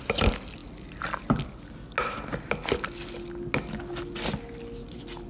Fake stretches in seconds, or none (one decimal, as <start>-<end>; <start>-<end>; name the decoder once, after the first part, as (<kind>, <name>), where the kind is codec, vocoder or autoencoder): none